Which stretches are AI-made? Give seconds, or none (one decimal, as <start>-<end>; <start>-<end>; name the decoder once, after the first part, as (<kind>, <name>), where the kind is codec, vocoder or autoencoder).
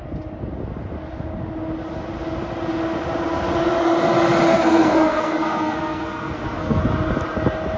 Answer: 4.5-6.8 (codec, SNAC)